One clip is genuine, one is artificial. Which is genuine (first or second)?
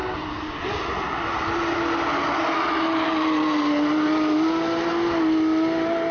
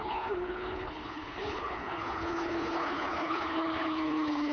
first